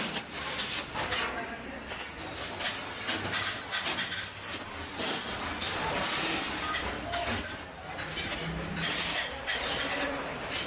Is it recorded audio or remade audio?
recorded